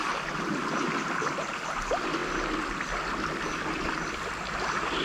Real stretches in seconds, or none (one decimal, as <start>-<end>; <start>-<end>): 0.0-5.0